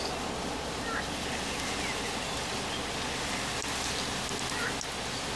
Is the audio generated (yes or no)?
no